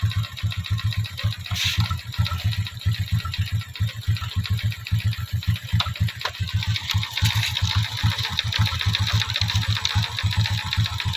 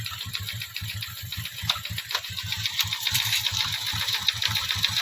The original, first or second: first